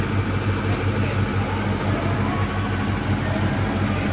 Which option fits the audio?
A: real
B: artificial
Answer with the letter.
A